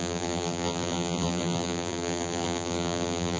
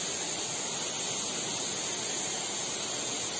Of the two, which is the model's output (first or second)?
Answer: first